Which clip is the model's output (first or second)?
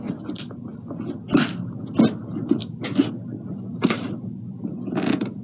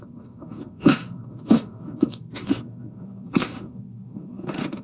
second